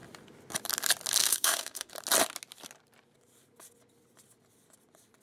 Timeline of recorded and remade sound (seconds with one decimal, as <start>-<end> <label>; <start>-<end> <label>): 0.0-1.2 recorded; 1.2-1.9 remade; 1.9-5.2 recorded